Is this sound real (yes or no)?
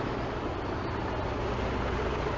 yes